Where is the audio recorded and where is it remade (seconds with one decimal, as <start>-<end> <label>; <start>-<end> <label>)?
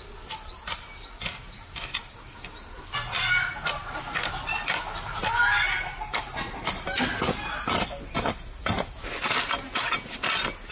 0.0-10.7 recorded